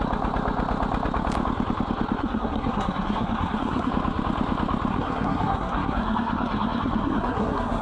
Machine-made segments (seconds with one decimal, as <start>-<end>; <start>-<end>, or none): 2.2-3.9; 4.9-7.8